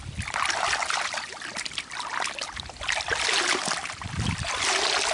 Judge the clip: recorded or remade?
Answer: recorded